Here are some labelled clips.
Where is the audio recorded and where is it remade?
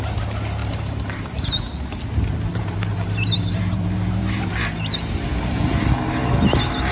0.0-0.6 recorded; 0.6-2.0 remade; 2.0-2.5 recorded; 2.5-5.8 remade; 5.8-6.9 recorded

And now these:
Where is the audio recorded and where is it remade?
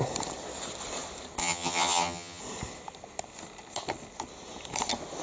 0.0-1.4 recorded; 1.4-2.4 remade; 2.4-5.2 recorded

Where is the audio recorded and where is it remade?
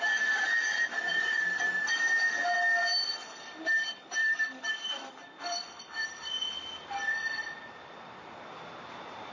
0.0-4.2 recorded; 4.2-8.0 remade; 8.0-9.3 recorded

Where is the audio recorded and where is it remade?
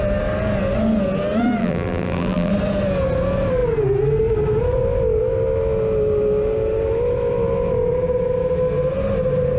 0.0-1.6 recorded; 1.6-2.5 remade; 2.5-9.6 recorded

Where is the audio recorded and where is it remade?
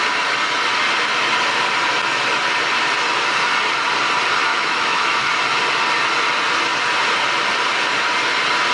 0.0-4.5 recorded; 4.5-5.3 remade; 5.3-8.7 recorded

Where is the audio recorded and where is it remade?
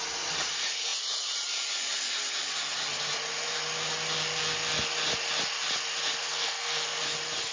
0.0-6.2 recorded; 6.2-7.0 remade; 7.0-7.5 recorded